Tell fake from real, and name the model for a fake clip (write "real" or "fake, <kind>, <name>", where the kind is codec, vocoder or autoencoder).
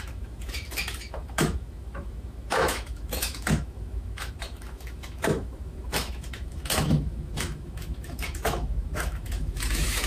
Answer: fake, autoencoder, DAC-VAE